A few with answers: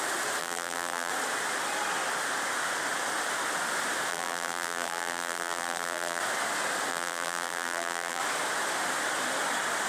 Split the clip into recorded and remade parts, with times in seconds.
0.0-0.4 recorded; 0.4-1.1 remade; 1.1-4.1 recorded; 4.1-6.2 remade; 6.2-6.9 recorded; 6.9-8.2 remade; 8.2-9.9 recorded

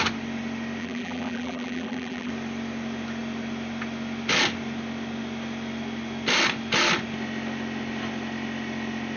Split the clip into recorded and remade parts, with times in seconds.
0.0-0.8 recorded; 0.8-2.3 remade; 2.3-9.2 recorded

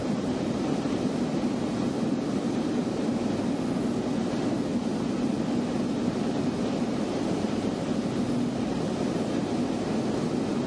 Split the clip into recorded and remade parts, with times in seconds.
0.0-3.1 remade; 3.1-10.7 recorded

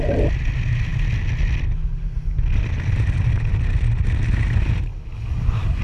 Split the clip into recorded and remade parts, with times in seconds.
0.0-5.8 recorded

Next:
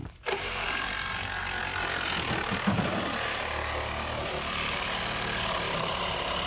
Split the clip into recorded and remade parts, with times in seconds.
0.0-1.6 remade; 1.6-6.5 recorded

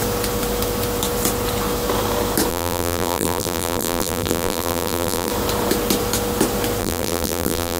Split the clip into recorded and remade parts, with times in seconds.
0.0-2.5 recorded; 2.5-5.3 remade; 5.3-6.8 recorded; 6.8-7.8 remade

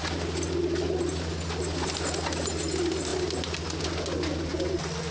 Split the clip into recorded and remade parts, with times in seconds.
0.0-5.1 recorded